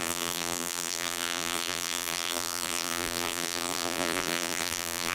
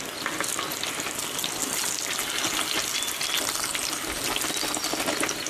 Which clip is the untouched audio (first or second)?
second